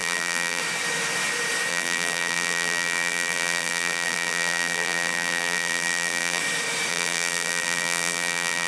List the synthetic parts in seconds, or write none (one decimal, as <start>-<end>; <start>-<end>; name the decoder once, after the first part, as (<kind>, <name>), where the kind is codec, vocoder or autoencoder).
0.0-0.6 (vocoder, BigVGAN v2); 1.7-6.4; 6.9-8.7

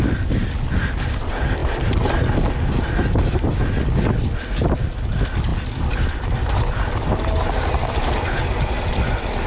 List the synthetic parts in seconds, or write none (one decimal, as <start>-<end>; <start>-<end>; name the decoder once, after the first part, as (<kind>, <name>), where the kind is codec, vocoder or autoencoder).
none